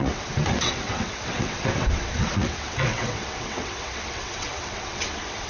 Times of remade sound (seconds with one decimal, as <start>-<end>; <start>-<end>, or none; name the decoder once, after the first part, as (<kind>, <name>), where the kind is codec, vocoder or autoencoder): 0.0-5.5 (vocoder, WaveNeXt)